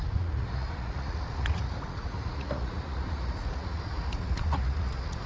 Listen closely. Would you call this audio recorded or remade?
remade